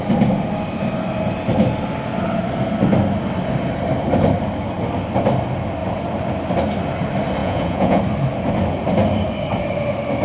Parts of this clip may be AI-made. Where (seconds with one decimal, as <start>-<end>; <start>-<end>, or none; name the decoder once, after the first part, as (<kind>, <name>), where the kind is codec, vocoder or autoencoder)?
7.4-8.0 (vocoder, Vocos)